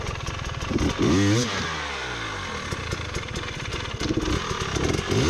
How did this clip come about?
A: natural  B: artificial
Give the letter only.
A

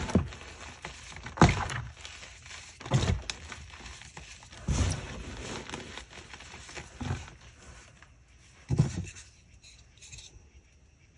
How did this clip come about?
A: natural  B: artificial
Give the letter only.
A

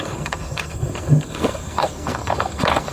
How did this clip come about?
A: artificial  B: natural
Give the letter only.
A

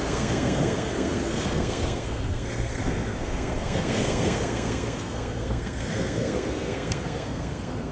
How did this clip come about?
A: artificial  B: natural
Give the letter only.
A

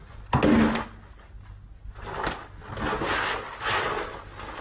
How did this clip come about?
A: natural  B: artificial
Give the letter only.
A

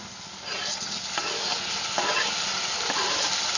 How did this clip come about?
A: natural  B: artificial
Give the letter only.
A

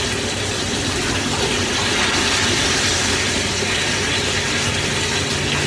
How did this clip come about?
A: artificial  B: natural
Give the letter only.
B